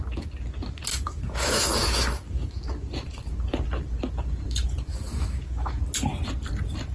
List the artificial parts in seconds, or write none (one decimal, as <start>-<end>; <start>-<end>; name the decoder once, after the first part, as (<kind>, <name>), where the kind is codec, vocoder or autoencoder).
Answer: 0.9-2.6 (autoencoder, DAC-VAE); 4.9-5.8

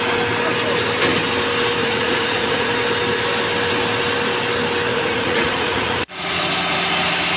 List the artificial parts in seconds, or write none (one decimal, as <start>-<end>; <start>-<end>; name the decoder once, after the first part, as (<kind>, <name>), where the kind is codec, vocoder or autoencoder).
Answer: 1.8-2.7 (vocoder, Vocos); 4.9-6.4

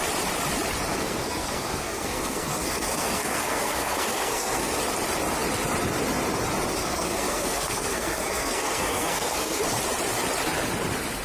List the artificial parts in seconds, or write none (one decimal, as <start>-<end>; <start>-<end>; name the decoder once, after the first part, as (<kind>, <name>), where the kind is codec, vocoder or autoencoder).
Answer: 0.9-4.8 (codec, SNAC); 6.8-9.6

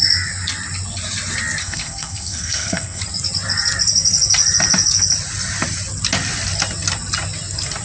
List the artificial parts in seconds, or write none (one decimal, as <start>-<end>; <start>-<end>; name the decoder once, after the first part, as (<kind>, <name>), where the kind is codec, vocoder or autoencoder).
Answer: 1.6-3.0 (codec, SNAC)